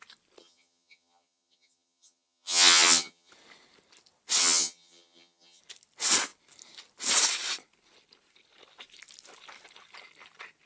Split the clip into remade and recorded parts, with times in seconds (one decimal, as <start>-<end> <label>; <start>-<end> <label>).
0.0-0.4 recorded; 0.4-3.3 remade; 3.3-4.4 recorded; 4.4-5.6 remade; 5.6-10.7 recorded